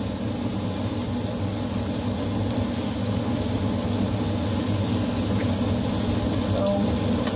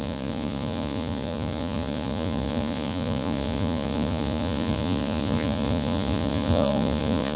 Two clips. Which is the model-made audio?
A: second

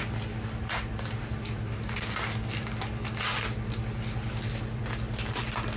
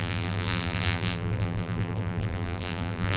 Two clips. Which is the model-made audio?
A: second